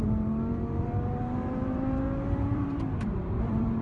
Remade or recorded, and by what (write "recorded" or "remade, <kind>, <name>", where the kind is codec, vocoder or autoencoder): remade, vocoder, BigVGAN v2